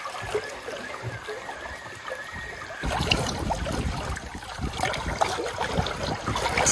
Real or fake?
real